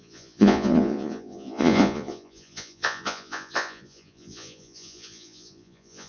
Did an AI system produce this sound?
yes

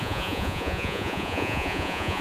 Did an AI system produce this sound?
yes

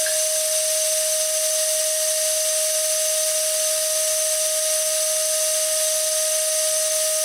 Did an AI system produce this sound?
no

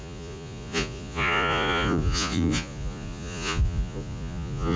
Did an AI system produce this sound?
yes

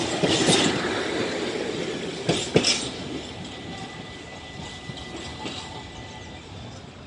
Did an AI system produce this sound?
no